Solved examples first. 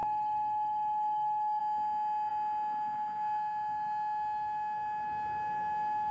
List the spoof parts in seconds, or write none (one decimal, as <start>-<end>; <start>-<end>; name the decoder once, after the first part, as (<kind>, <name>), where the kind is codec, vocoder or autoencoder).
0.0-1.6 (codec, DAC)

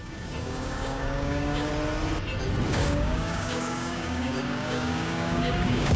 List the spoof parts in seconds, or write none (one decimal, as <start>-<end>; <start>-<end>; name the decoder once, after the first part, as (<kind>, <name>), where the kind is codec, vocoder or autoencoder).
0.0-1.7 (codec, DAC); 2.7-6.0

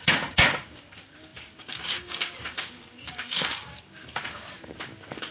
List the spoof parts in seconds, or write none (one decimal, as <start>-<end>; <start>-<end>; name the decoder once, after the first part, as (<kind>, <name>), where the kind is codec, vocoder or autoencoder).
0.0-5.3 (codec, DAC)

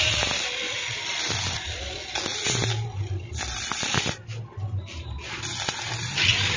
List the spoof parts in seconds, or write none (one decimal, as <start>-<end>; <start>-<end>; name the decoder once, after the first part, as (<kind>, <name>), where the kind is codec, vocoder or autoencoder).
none

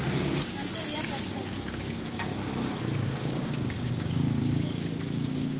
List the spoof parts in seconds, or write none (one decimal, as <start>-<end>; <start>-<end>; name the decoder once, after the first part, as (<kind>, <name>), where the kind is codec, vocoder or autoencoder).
0.0-2.3 (codec, DAC); 2.8-5.6